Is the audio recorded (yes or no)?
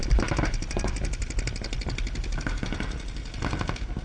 yes